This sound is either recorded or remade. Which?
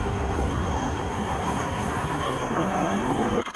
remade